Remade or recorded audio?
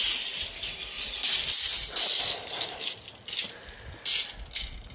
recorded